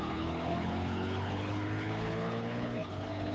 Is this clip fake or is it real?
fake